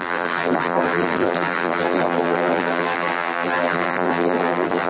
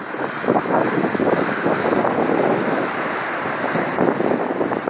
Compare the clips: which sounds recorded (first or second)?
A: second